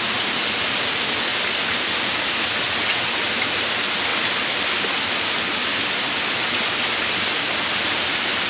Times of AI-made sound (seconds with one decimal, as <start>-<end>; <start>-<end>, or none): none